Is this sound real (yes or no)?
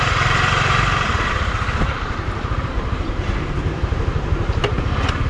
no